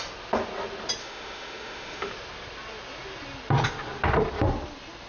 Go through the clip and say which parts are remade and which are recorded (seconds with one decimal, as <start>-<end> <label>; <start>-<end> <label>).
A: 0.0-1.0 recorded; 1.0-2.1 remade; 2.1-5.1 recorded